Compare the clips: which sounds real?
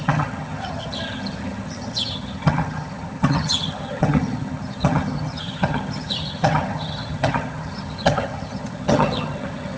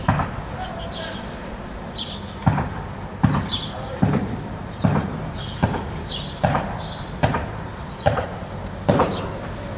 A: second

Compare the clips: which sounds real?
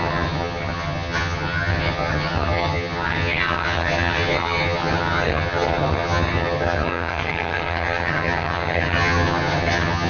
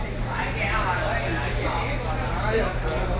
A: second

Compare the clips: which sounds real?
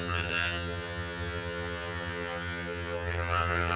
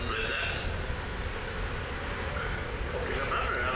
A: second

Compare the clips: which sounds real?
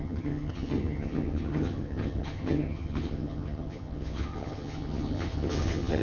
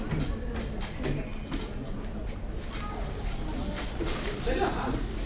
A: second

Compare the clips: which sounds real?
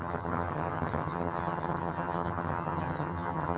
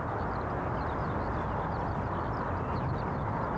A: second